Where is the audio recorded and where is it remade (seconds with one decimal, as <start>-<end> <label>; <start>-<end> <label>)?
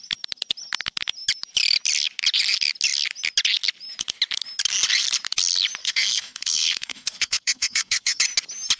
0.0-5.8 recorded; 5.8-8.2 remade; 8.2-8.8 recorded